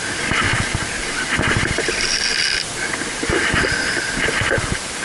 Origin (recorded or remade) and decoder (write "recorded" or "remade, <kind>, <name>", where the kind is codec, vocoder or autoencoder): recorded